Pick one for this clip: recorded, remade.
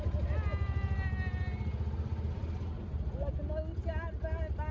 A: recorded